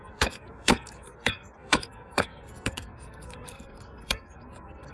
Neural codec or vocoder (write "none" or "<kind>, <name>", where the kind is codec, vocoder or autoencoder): codec, SNAC